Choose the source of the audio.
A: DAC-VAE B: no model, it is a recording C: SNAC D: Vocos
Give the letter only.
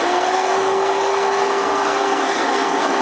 C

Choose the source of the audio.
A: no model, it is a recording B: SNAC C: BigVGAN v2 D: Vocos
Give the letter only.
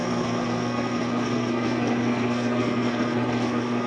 B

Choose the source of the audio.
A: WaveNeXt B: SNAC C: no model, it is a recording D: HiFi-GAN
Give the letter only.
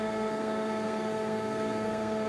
B